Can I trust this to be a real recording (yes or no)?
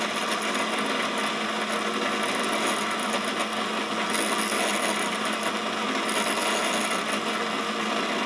yes